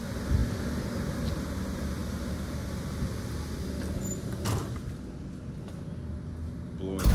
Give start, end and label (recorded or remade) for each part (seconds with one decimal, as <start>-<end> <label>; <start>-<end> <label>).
0.0-7.1 recorded